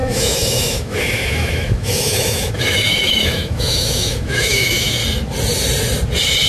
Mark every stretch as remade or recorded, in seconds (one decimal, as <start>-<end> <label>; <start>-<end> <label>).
0.0-5.0 remade; 5.0-6.5 recorded